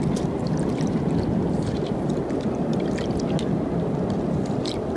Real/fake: real